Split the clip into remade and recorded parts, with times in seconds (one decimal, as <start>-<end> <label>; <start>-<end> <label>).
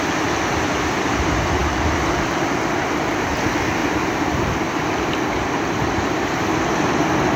0.0-7.4 recorded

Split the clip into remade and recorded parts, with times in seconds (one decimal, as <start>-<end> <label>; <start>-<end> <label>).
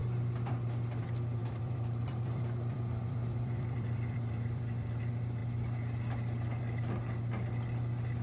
0.0-1.4 recorded; 1.4-5.0 remade; 5.0-8.2 recorded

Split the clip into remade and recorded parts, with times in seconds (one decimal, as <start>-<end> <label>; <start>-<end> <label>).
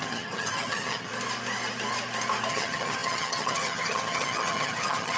0.0-1.1 remade; 1.1-2.5 recorded; 2.5-5.2 remade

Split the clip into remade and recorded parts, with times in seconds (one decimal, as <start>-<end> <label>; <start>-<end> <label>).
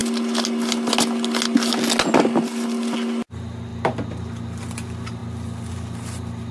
0.0-6.5 recorded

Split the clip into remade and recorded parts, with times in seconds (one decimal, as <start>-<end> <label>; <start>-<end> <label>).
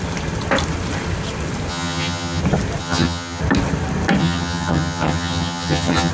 0.0-1.7 recorded; 1.7-2.4 remade; 2.4-2.8 recorded; 2.8-3.4 remade; 3.4-4.2 recorded; 4.2-6.1 remade